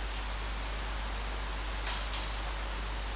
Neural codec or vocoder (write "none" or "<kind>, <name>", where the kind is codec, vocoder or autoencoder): none